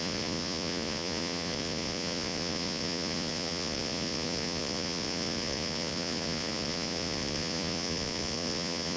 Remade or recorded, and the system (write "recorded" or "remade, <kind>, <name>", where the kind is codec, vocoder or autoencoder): remade, vocoder, Vocos